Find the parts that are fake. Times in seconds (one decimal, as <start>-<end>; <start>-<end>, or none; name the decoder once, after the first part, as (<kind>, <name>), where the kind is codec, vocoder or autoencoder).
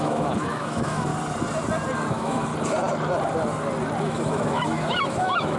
0.0-1.1 (autoencoder, DAC-VAE); 2.1-2.5; 4.0-5.6